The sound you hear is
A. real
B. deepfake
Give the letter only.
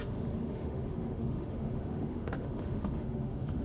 B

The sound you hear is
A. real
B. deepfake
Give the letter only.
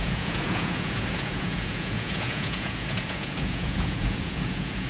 B